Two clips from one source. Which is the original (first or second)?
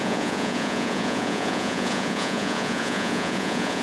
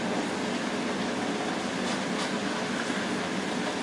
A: second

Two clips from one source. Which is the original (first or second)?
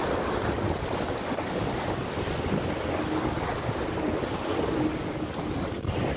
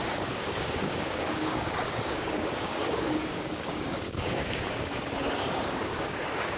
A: first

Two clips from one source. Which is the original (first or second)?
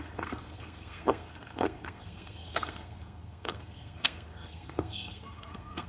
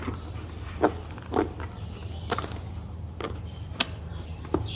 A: second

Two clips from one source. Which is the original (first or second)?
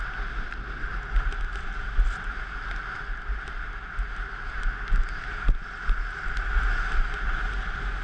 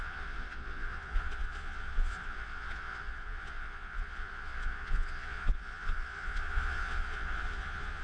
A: first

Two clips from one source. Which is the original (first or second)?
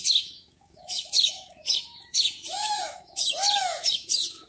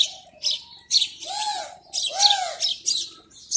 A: second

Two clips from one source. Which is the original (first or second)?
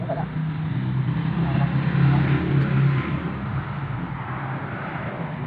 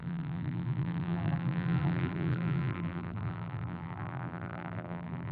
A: first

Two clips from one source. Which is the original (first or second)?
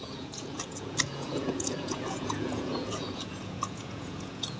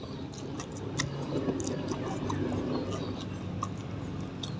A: second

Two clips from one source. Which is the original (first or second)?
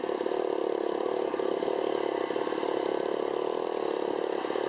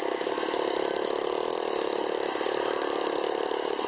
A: first